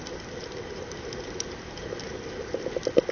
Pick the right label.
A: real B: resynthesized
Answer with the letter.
A